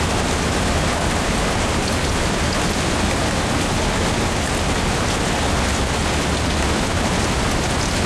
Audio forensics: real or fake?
real